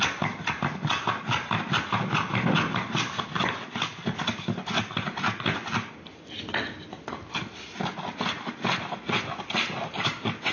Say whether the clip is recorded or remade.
recorded